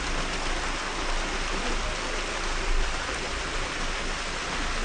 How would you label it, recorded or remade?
recorded